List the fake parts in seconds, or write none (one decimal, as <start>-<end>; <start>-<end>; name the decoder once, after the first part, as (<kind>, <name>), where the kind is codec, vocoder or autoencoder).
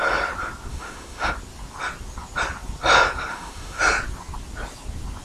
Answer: 0.7-1.3 (autoencoder, DAC-VAE); 3.3-3.8